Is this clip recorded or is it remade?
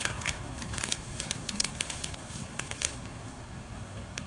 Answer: remade